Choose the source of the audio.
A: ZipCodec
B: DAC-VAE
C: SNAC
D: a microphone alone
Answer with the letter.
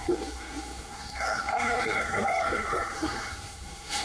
C